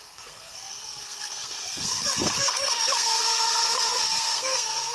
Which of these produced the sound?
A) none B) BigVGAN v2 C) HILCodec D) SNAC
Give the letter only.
D